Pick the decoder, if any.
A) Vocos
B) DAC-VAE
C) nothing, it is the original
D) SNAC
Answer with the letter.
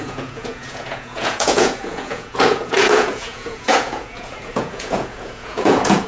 A